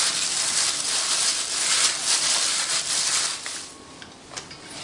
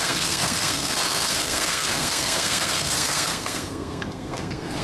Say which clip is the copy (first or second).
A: second